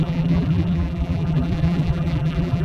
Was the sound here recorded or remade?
remade